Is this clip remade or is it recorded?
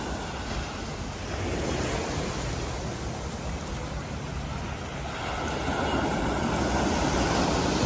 recorded